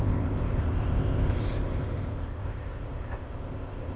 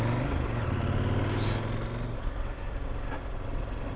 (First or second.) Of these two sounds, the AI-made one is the first